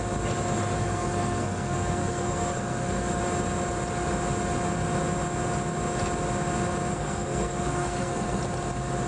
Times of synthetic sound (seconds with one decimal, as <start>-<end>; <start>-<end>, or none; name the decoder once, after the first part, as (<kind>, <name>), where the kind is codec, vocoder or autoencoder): 0.8-3.2 (codec, SNAC); 6.9-8.4